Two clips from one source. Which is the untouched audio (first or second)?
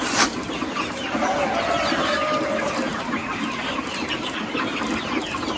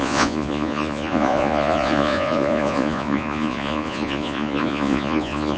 first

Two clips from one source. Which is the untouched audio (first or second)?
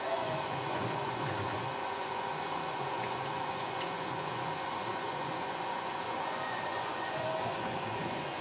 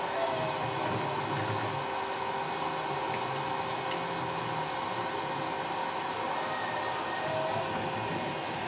second